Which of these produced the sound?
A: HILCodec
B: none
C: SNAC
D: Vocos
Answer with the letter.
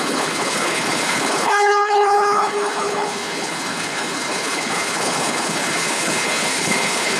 A